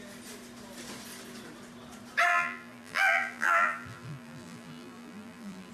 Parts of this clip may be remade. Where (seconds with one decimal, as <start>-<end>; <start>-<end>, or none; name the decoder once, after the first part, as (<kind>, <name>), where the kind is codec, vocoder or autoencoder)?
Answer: 2.3-5.7 (vocoder, BigVGAN v2)